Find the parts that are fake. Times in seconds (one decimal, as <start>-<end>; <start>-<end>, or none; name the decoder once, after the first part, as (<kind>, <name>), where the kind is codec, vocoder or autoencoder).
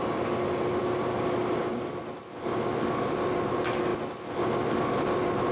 none